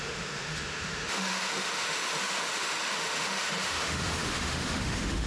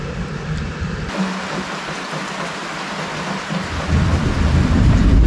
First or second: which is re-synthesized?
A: first